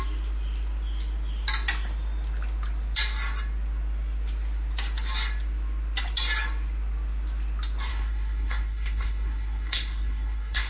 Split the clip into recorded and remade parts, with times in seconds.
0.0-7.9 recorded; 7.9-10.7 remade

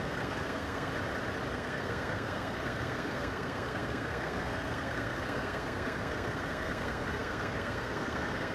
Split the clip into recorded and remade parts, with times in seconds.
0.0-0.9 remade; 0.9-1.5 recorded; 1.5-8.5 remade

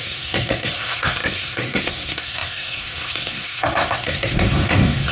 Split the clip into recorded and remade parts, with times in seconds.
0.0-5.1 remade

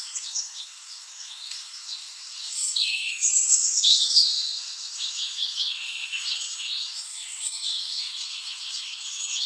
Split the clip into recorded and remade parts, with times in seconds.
0.0-9.5 remade

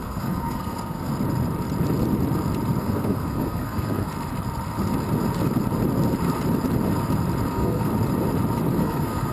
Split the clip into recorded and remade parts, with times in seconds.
0.0-1.1 remade; 1.1-2.8 recorded; 2.8-4.1 remade; 4.1-7.5 recorded; 7.5-7.9 remade; 7.9-8.8 recorded; 8.8-9.3 remade

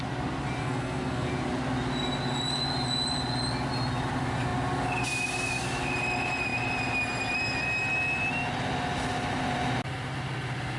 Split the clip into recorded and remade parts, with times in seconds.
0.0-0.6 recorded; 0.6-1.3 remade; 1.3-10.8 recorded

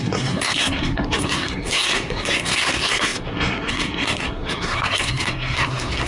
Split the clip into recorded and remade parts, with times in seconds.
0.0-6.1 remade

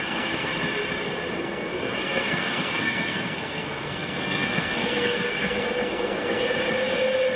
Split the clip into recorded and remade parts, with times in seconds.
0.0-0.5 remade; 0.5-1.4 recorded; 1.4-6.4 remade; 6.4-7.4 recorded